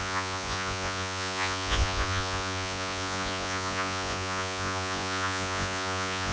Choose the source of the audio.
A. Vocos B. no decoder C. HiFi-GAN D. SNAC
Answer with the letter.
A